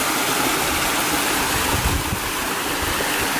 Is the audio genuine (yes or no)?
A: yes